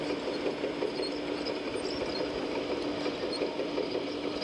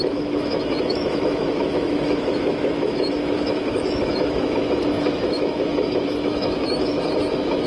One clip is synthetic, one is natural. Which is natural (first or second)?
first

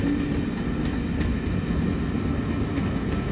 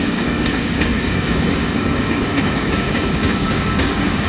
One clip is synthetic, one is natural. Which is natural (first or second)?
first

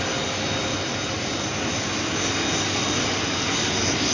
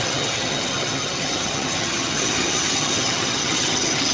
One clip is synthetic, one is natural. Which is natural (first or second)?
first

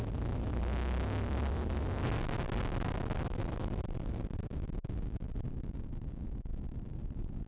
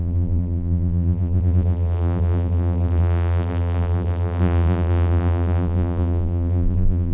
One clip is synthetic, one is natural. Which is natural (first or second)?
first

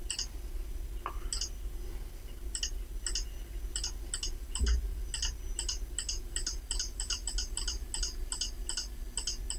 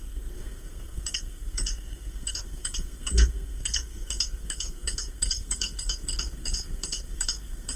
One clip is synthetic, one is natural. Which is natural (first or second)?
first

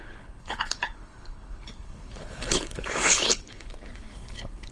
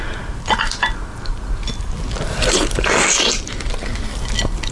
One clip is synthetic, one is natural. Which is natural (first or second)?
second